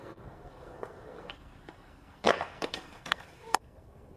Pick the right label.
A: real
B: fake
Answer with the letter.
B